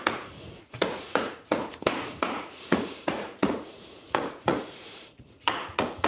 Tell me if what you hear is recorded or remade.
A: remade